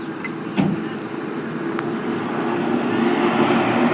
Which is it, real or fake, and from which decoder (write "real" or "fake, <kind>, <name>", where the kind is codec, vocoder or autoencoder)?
real